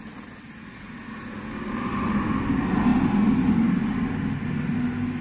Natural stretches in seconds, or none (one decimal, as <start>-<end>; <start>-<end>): 0.0-5.2